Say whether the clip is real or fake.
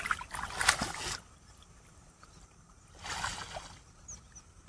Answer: real